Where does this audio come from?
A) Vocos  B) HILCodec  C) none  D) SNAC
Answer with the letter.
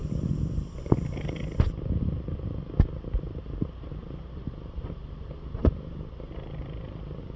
C